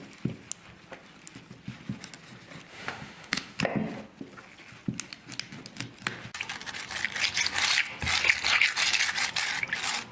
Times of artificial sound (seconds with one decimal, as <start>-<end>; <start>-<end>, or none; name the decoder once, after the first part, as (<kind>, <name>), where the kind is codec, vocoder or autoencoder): 2.7-3.6 (autoencoder, DAC-VAE)